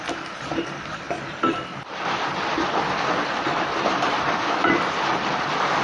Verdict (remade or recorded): remade